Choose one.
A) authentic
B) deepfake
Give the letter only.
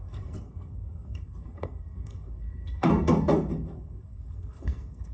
B